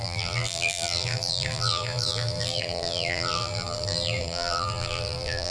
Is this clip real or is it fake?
fake